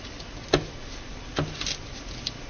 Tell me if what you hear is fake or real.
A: real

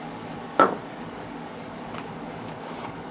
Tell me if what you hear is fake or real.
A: fake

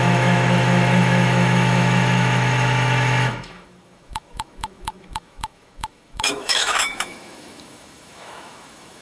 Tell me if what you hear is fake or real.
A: fake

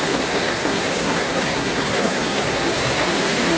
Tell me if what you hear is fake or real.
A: fake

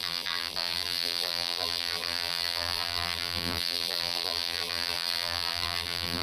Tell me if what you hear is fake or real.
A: fake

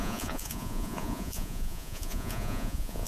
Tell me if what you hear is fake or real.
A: fake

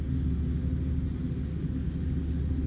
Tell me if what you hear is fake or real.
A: real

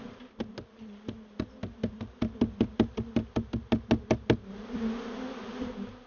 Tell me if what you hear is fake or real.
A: real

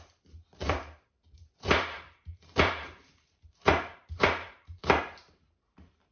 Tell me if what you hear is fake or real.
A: fake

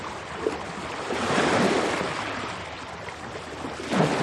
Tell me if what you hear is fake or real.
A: real